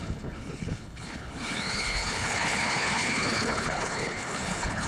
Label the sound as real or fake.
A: fake